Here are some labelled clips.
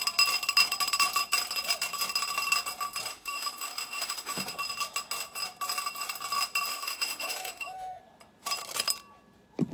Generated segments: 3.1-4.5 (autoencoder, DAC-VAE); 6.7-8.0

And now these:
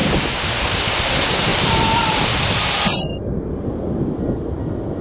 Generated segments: 0.0-0.9 (vocoder, BigVGAN v2); 1.5-2.9

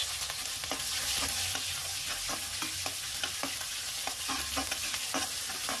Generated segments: none

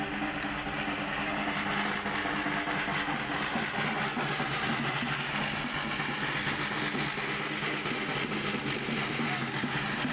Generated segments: none

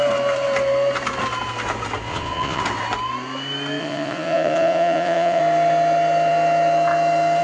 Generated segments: 2.1-2.6 (vocoder, Vocos); 3.8-5.4

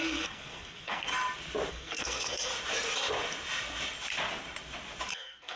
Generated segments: 0.0-1.1 (codec, SNAC); 1.7-2.5; 5.1-5.6

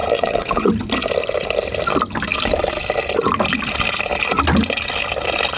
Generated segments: 0.0-0.7 (vocoder, WaveNeXt)